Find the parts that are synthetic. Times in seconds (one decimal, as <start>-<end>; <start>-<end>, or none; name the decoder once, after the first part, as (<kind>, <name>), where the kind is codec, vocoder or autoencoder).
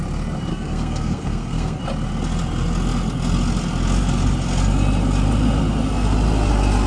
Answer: 0.5-1.8 (codec, SNAC)